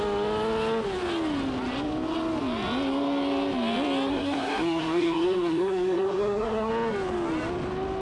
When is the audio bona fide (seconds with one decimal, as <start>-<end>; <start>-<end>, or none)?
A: 0.0-4.1; 6.7-8.0